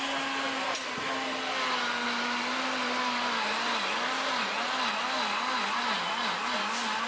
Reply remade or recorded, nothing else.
recorded